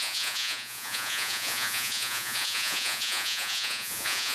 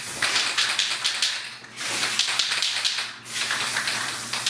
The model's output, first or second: first